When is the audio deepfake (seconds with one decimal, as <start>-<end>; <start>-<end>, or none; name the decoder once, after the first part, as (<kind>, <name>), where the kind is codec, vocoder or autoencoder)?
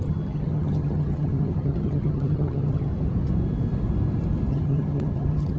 0.0-2.9 (vocoder, HiFi-GAN); 4.5-5.6